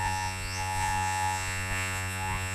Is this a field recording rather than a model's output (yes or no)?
no